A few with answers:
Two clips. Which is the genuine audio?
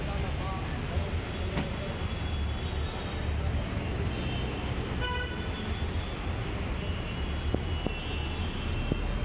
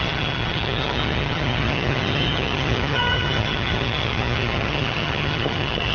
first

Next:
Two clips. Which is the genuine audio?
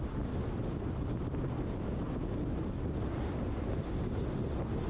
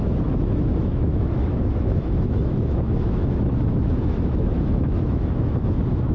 first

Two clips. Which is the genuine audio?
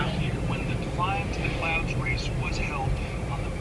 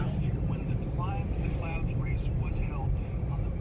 first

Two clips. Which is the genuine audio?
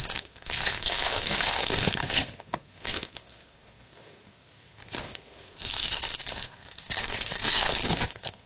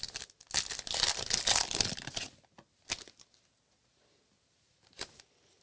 second